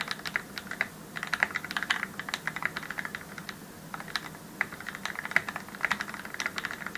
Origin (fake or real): real